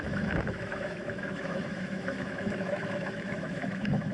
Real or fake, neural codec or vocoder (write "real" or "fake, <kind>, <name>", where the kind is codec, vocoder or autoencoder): fake, autoencoder, DAC-VAE